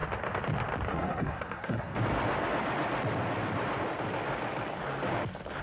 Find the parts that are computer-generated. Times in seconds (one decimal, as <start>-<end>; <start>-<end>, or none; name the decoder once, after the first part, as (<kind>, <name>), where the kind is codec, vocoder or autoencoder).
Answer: 0.9-1.9 (codec, SNAC)